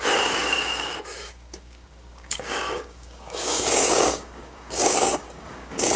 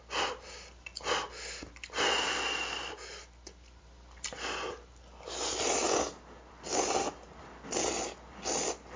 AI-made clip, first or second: first